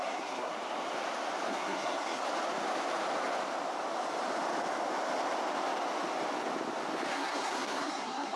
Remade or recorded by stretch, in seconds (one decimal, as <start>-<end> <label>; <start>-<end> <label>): 0.0-0.5 remade; 0.5-1.5 recorded; 1.5-2.2 remade; 2.2-7.1 recorded; 7.1-8.4 remade